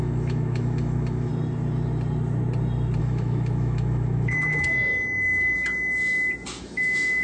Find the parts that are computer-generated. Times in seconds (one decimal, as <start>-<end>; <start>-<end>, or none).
0.0-1.3; 3.0-4.9; 6.6-7.2